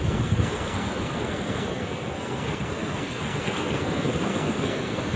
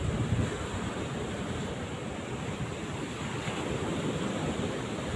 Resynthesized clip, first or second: first